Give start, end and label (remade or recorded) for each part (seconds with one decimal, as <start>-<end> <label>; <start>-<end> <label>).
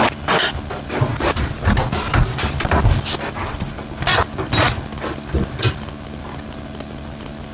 0.0-7.5 recorded